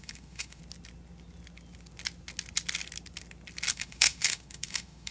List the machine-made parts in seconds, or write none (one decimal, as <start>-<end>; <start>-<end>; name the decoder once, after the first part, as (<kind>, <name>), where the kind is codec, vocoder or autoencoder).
0.0-0.6 (autoencoder, DAC-VAE); 3.7-5.1